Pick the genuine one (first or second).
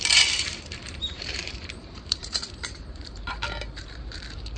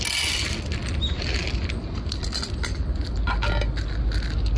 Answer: second